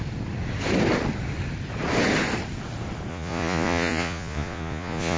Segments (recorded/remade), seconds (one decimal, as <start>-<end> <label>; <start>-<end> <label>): 0.0-3.1 recorded; 3.1-5.2 remade